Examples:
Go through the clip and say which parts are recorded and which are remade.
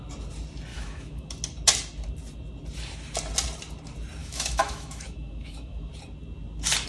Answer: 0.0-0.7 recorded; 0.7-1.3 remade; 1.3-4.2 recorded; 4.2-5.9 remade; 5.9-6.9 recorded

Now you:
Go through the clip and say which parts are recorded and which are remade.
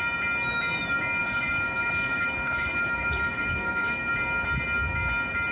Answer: 0.0-1.2 recorded; 1.2-4.1 remade; 4.1-5.5 recorded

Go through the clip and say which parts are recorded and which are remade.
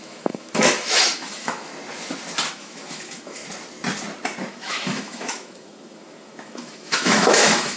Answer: 0.0-1.7 remade; 1.7-2.5 recorded; 2.5-3.4 remade; 3.4-4.5 recorded; 4.5-7.8 remade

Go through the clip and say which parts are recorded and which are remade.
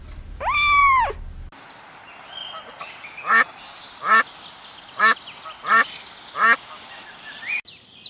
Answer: 0.0-8.1 recorded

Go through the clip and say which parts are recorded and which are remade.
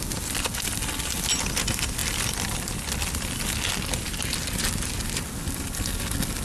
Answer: 0.0-6.4 recorded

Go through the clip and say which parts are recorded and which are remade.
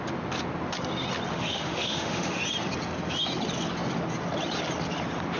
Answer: 0.0-1.3 recorded; 1.3-2.4 remade; 2.4-5.4 recorded